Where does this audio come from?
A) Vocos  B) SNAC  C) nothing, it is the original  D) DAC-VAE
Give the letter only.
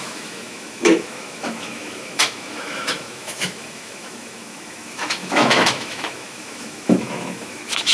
D